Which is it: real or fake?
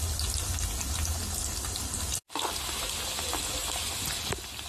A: real